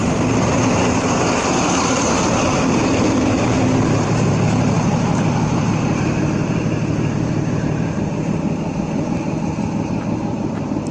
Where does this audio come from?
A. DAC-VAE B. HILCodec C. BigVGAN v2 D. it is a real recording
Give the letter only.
C